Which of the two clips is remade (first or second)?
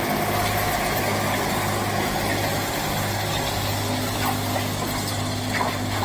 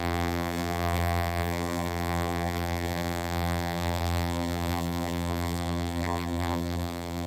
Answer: second